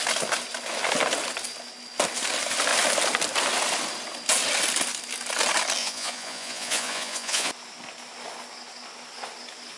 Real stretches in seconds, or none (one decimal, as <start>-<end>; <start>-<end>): 0.0-5.8; 7.5-9.8